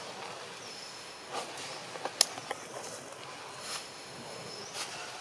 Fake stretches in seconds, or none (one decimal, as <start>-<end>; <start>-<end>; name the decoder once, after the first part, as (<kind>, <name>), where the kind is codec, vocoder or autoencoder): 0.7-1.3 (autoencoder, DAC-VAE); 3.6-4.6